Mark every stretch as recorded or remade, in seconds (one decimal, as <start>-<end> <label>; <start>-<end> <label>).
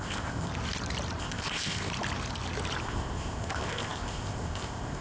0.0-0.5 remade; 0.5-1.2 recorded; 1.2-1.9 remade; 1.9-2.8 recorded; 2.8-5.0 remade